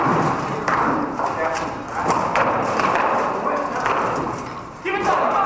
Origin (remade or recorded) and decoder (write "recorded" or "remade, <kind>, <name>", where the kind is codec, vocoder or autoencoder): recorded